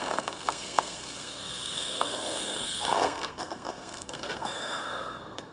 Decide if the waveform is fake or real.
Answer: fake